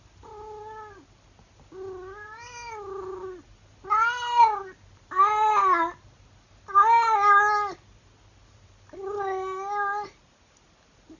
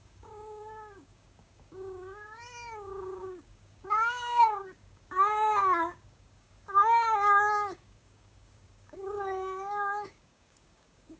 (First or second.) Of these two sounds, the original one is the first